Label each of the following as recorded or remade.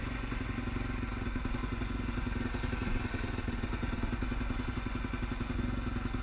remade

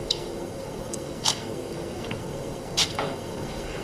remade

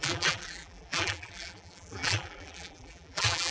remade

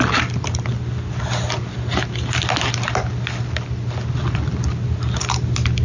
recorded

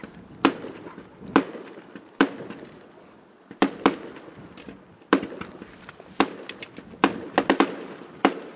recorded